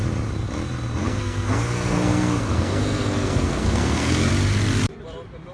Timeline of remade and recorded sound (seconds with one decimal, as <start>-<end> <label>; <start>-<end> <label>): 0.0-1.0 recorded; 1.0-4.3 remade; 4.3-5.5 recorded